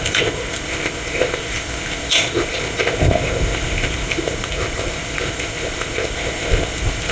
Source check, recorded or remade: remade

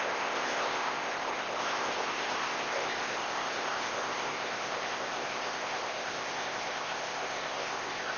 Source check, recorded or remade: remade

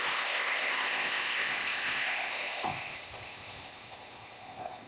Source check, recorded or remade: remade